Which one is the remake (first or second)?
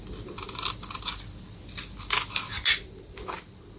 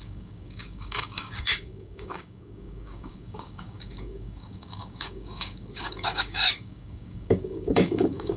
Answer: second